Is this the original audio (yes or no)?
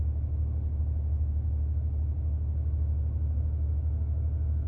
yes